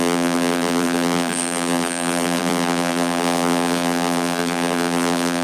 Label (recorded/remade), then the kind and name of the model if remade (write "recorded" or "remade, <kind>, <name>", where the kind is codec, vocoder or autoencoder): remade, vocoder, BigVGAN v2